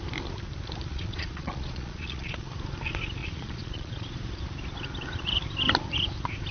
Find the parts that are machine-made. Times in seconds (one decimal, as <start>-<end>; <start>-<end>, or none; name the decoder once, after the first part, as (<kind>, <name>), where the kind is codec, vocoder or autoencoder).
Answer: 0.9-2.3 (vocoder, Vocos); 3.2-4.1